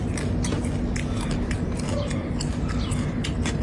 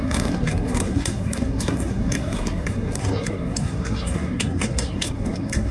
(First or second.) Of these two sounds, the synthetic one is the second